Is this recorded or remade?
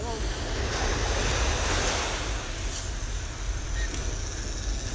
recorded